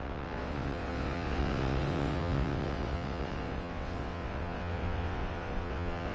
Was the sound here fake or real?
fake